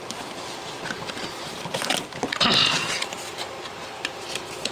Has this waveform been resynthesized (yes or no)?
no